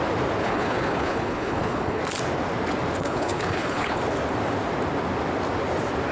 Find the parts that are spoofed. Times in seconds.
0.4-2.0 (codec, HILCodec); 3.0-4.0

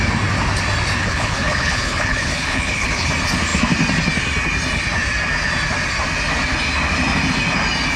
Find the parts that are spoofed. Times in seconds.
1.0-3.1 (codec, HILCodec)

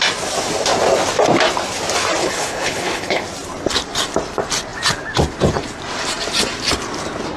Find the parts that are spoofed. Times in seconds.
2.2-3.2 (codec, HILCodec)

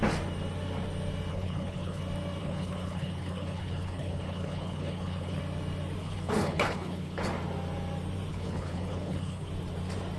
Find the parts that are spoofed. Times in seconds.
1.3-2.0 (codec, HILCodec); 2.4-5.4; 6.0-7.2; 8.3-9.5

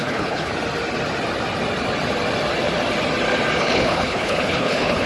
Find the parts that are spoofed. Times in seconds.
0.0-0.5 (codec, HILCodec); 3.6-5.1

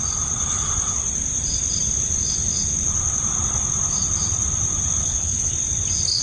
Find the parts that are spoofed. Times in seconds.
5.0-5.5 (codec, HILCodec)